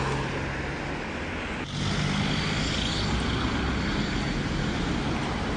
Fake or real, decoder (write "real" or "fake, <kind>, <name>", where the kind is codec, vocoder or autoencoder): real